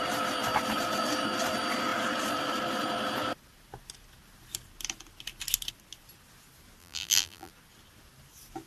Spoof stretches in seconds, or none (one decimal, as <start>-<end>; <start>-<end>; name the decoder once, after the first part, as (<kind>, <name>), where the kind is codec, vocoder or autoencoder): 6.8-7.5 (vocoder, BigVGAN v2)